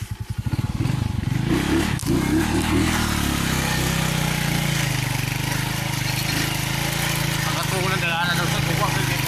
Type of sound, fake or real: real